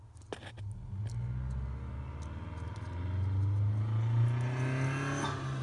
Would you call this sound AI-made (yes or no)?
no